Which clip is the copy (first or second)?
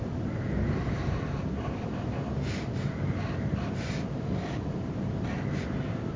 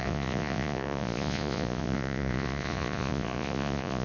second